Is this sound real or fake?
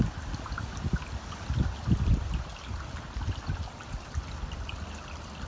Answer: real